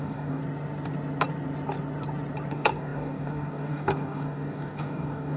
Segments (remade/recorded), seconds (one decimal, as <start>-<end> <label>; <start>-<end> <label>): 0.0-0.4 remade; 0.4-2.5 recorded; 2.5-5.4 remade